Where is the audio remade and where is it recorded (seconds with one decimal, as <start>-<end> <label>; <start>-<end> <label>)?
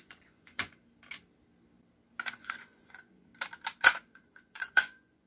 0.0-0.8 remade; 0.8-2.3 recorded; 2.3-3.3 remade; 3.3-4.1 recorded; 4.1-5.3 remade